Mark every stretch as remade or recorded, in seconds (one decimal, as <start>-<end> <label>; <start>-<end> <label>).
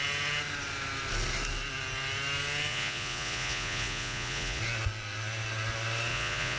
0.0-2.7 recorded; 2.7-4.6 remade; 4.6-6.1 recorded; 6.1-6.6 remade